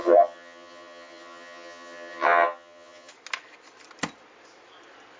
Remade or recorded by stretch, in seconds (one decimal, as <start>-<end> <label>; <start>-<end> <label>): 0.0-3.1 remade; 3.1-5.2 recorded